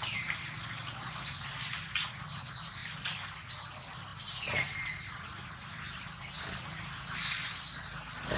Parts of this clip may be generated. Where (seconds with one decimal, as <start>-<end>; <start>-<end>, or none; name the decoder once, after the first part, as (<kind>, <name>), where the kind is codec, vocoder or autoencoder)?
none